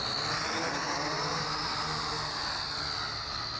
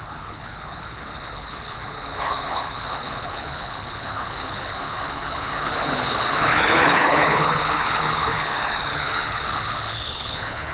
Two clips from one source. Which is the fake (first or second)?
second